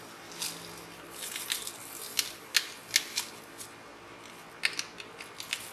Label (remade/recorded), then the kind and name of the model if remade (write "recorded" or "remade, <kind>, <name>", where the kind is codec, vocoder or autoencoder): recorded